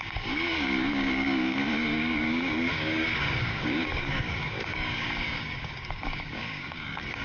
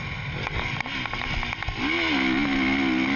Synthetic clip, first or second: first